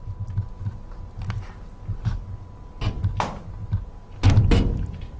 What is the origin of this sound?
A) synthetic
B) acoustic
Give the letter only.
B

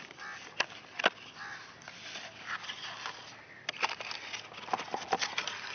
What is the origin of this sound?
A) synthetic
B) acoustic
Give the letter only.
B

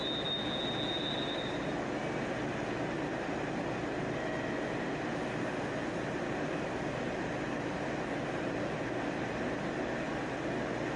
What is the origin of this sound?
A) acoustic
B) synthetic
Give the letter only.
A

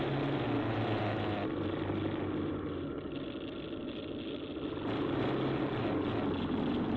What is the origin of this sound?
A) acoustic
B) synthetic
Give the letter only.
A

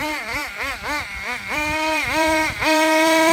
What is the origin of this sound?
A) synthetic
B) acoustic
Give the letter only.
A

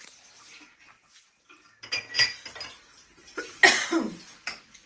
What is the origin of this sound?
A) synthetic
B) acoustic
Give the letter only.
B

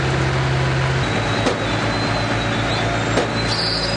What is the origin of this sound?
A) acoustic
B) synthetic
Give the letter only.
A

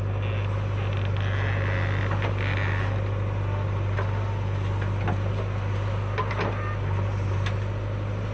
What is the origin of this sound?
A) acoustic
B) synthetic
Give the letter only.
A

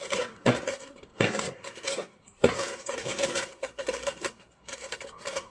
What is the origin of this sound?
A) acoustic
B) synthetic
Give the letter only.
B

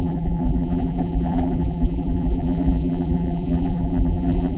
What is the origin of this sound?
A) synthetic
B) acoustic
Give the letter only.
A